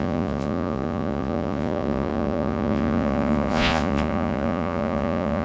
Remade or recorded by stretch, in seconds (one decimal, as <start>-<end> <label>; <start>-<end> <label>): 0.0-5.4 remade